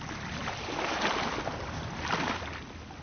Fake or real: real